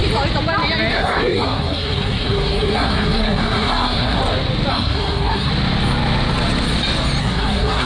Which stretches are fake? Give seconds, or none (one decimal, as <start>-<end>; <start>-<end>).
0.9-4.2; 4.7-5.5; 7.2-7.9